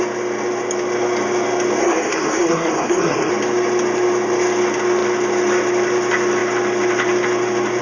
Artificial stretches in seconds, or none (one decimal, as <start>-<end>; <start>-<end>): 1.8-3.3